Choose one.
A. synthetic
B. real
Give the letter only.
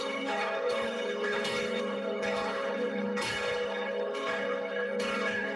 A